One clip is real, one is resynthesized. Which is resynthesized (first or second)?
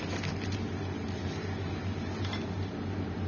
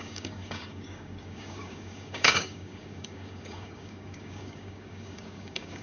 second